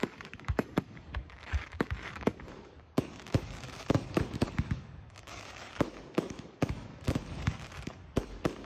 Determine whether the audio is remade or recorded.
remade